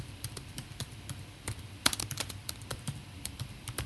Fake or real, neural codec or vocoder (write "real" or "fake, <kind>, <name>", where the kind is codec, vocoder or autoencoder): fake, vocoder, BigVGAN v2